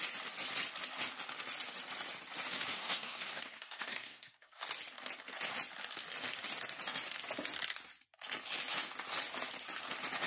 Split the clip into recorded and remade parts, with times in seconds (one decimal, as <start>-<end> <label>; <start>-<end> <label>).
0.0-2.7 recorded; 2.7-4.6 remade; 4.6-10.3 recorded